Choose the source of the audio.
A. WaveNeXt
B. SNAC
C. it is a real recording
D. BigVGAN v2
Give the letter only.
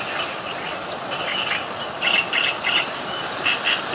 C